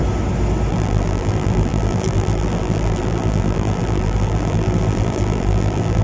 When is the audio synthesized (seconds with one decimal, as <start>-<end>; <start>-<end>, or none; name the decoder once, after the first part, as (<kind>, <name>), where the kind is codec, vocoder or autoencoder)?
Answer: 0.7-6.0 (vocoder, BigVGAN v2)